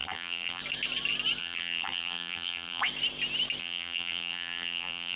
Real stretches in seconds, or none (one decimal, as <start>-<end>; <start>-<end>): 0.6-1.4; 2.8-3.6